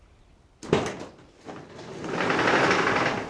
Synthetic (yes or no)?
no